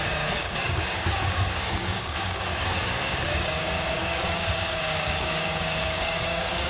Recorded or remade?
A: remade